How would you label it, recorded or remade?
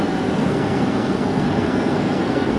remade